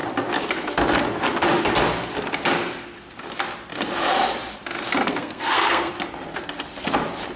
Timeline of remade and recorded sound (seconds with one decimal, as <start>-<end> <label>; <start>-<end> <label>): 0.0-5.0 recorded; 5.0-5.9 remade; 5.9-7.4 recorded